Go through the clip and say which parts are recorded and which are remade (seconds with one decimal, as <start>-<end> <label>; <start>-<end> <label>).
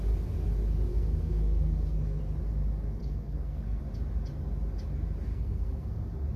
0.0-0.9 recorded; 0.9-2.2 remade; 2.2-3.0 recorded; 3.0-3.8 remade; 3.8-5.3 recorded; 5.3-6.0 remade; 6.0-6.4 recorded